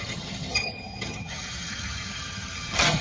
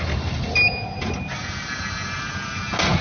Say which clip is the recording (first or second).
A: second